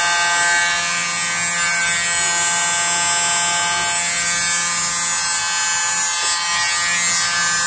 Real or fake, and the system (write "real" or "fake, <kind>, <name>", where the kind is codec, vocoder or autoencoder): real